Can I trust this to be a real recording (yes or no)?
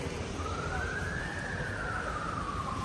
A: no